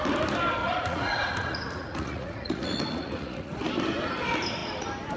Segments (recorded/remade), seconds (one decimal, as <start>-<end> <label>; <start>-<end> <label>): 0.0-0.6 recorded; 0.6-3.7 remade; 3.7-5.2 recorded